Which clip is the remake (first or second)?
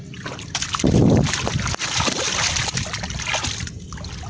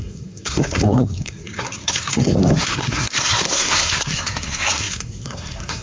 second